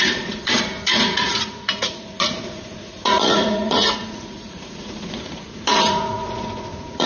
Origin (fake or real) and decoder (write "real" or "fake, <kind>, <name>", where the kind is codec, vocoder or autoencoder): fake, vocoder, Vocos